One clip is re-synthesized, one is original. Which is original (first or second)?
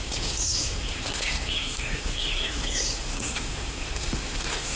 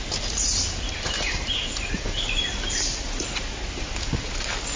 second